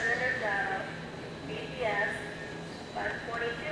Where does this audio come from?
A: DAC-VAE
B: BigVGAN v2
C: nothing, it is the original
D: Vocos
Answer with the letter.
C